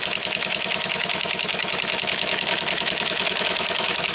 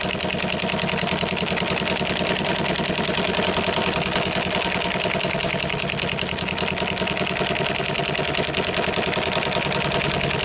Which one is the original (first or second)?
second